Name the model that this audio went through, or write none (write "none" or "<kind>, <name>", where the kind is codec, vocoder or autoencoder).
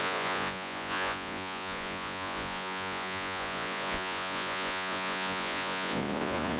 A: vocoder, Vocos